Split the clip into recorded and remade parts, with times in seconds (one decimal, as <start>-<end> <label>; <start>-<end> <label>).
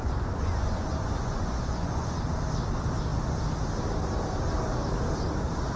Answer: 0.0-2.2 remade; 2.2-5.8 recorded